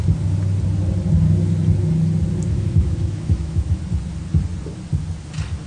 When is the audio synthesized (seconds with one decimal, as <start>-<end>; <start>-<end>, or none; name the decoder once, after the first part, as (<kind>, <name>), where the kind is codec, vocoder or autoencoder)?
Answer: 2.5-3.8 (autoencoder, DAC-VAE)